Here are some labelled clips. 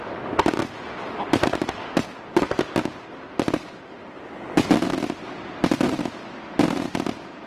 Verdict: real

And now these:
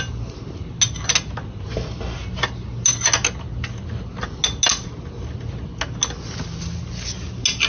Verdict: real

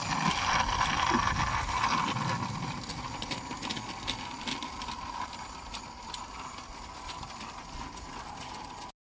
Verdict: real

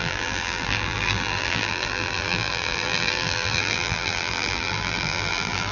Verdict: fake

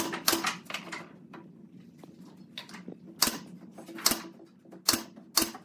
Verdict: real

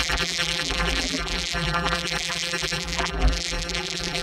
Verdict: fake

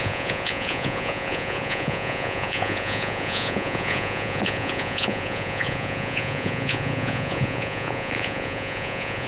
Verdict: fake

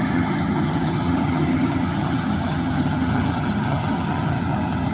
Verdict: fake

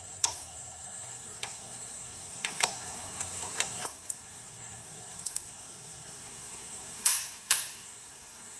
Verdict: fake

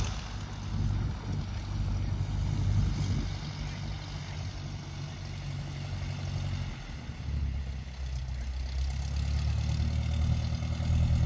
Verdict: real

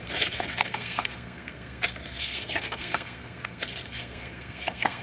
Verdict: fake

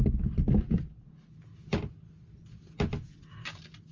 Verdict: real